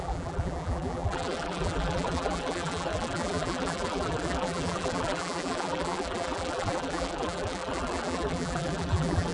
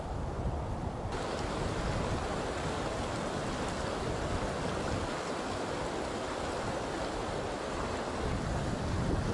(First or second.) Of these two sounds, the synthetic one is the first